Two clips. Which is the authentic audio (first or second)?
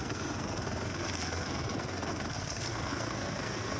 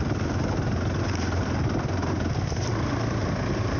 second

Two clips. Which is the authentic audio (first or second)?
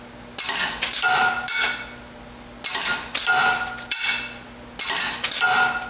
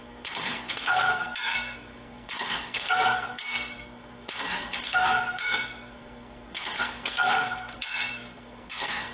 first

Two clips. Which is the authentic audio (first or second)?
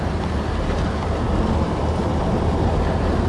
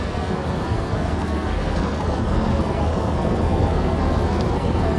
first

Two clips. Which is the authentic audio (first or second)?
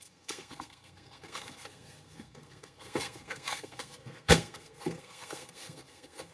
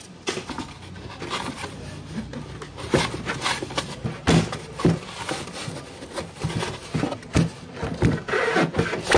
second